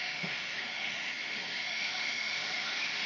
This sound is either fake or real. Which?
fake